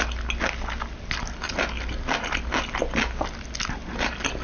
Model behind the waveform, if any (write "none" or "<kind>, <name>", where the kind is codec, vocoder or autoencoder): none